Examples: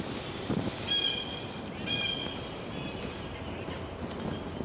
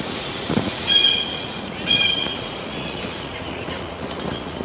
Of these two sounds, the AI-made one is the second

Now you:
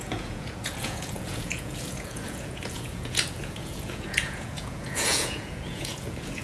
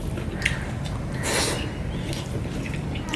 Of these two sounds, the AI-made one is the first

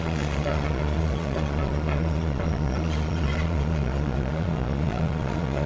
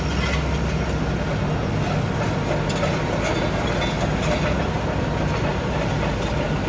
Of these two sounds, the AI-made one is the first